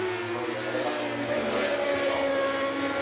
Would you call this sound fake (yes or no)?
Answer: no